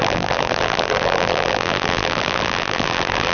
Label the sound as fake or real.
fake